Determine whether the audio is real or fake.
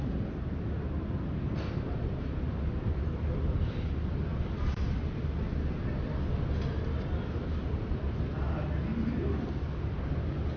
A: real